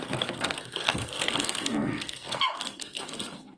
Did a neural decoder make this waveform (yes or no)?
yes